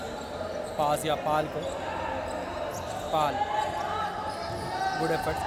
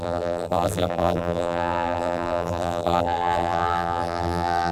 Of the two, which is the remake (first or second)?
second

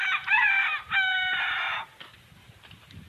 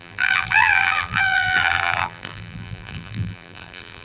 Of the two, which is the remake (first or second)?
second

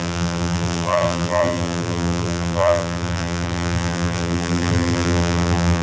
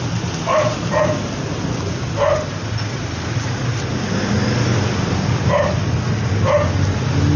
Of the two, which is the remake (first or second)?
first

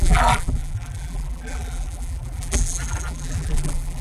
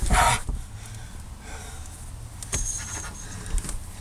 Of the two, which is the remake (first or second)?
first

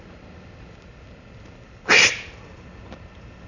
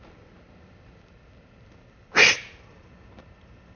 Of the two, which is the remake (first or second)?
first